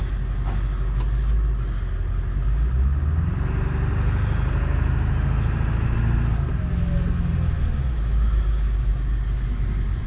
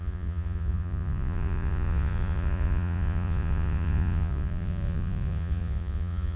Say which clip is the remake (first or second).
second